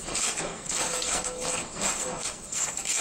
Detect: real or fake fake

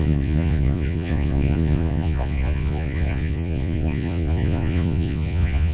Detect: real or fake fake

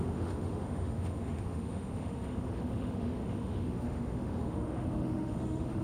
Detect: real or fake fake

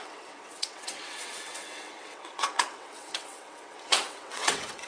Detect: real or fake fake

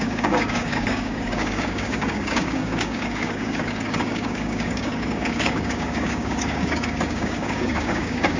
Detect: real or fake fake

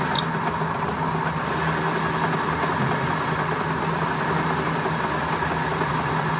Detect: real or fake real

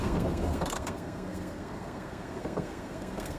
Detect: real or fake fake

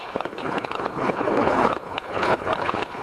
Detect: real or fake fake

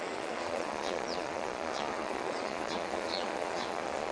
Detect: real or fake fake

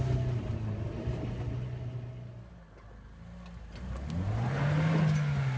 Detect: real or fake real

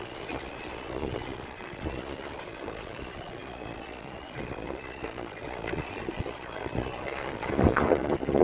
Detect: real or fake fake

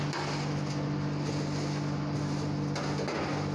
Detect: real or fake real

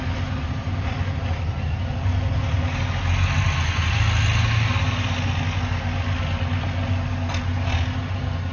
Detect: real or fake real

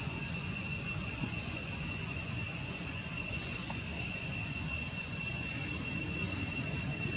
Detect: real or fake fake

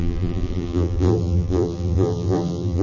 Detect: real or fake fake